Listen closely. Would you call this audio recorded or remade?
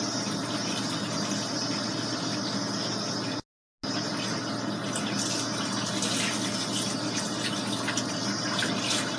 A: recorded